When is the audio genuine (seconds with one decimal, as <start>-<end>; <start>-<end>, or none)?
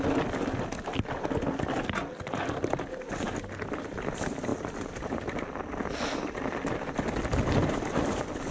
0.0-4.5; 7.7-8.5